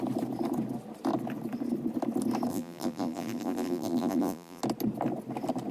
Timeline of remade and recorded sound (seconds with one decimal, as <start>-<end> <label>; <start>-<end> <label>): 0.0-2.5 recorded; 2.5-4.6 remade; 4.6-5.7 recorded